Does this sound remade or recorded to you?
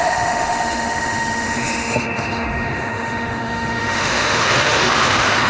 remade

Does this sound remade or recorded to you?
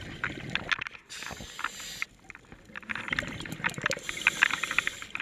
recorded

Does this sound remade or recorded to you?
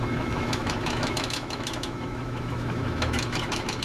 remade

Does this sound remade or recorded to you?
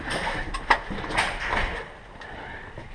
recorded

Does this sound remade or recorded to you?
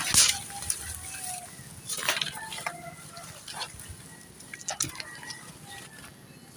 recorded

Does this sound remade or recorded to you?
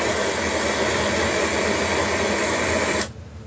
recorded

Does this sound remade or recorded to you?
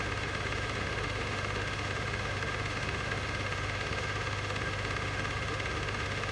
remade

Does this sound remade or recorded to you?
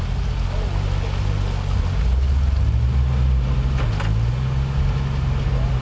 recorded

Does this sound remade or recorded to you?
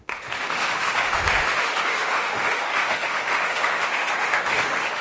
remade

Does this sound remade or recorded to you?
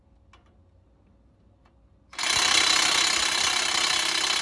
recorded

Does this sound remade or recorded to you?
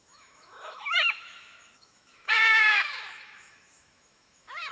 remade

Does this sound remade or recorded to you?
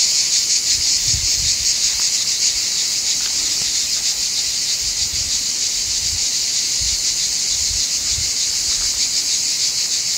recorded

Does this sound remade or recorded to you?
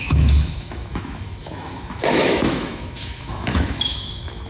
remade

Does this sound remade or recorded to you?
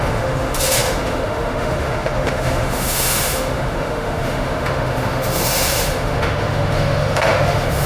remade